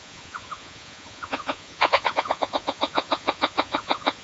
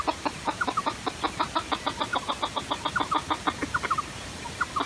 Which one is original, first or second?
second